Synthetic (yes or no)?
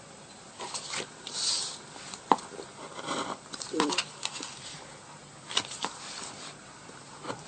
no